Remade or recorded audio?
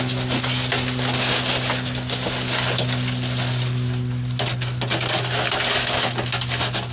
recorded